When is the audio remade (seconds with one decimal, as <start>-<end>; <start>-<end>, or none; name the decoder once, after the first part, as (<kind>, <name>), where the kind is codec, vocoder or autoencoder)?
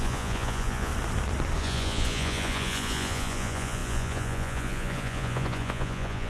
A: 0.0-0.9 (vocoder, Vocos); 1.6-6.3